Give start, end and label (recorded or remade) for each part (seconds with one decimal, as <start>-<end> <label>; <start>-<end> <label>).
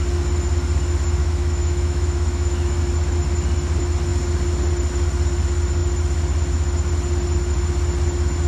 0.0-1.2 recorded; 1.2-2.8 remade; 2.8-8.5 recorded